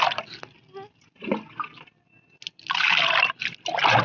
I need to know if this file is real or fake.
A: real